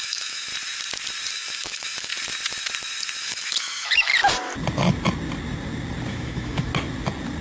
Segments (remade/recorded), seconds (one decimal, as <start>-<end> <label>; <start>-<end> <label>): 0.0-0.5 remade; 0.5-1.3 recorded; 1.3-2.1 remade; 2.1-3.2 recorded; 3.2-4.1 remade; 4.1-6.1 recorded; 6.1-6.7 remade; 6.7-7.4 recorded

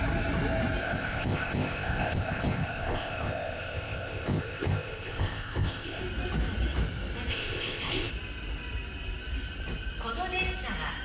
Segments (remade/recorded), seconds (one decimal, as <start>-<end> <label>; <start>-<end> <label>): 0.0-0.8 recorded; 0.8-6.0 remade; 6.0-7.3 recorded; 7.3-8.1 remade; 8.1-11.0 recorded

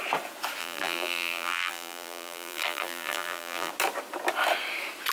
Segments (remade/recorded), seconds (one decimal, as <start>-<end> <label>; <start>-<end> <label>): 0.0-0.6 recorded; 0.6-3.7 remade; 3.7-5.1 recorded

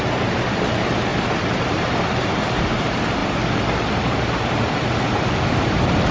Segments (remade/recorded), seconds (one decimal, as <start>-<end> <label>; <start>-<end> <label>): 0.0-1.1 remade; 1.1-1.7 recorded; 1.7-3.2 remade; 3.2-3.9 recorded; 3.9-6.1 remade

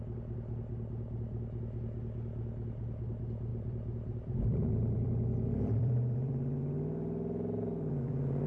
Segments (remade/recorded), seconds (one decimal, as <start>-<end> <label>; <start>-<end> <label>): 0.0-3.5 recorded; 3.5-8.5 remade